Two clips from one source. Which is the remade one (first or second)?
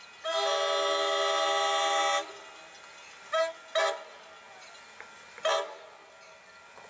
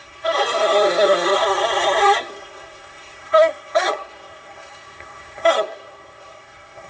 second